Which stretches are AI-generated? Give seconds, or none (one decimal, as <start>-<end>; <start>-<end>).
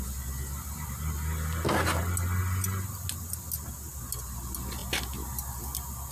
none